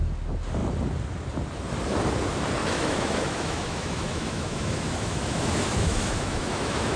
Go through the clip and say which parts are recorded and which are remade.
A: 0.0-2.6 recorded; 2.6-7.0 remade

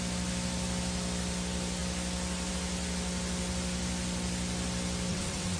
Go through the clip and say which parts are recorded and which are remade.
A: 0.0-5.1 recorded; 5.1-5.6 remade